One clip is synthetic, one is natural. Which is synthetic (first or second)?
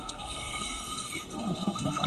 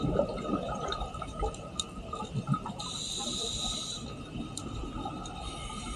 first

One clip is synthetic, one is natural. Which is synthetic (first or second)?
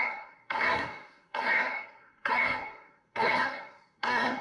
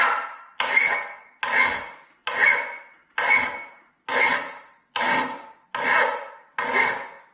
first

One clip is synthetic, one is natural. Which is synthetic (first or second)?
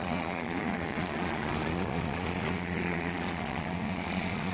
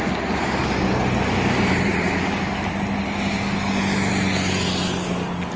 first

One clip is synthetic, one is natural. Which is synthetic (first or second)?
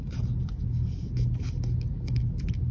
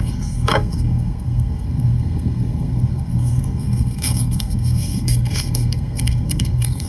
second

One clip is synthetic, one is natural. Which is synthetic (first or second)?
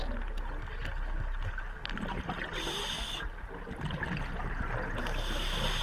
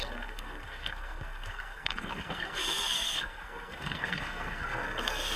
second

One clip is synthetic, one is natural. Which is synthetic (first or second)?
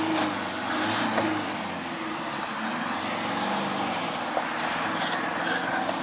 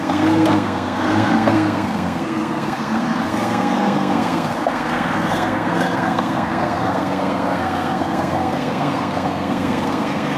second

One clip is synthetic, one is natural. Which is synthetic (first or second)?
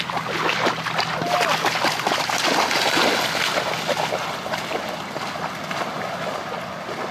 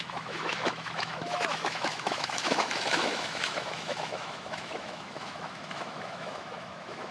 second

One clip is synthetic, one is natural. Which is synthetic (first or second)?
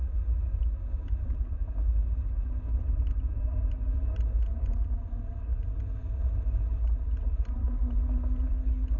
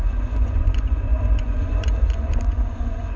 second